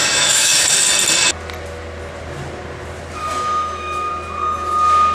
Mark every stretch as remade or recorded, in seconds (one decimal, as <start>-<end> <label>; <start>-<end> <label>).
0.0-0.6 remade; 0.6-3.2 recorded; 3.2-4.1 remade; 4.1-5.1 recorded